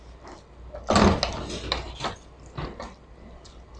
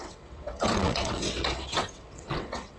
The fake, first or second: second